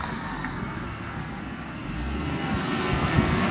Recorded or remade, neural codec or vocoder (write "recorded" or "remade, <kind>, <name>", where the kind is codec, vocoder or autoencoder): remade, codec, SNAC